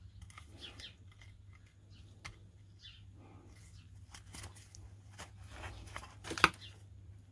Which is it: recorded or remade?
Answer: recorded